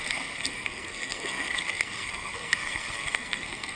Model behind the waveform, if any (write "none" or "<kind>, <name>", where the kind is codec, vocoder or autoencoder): codec, SNAC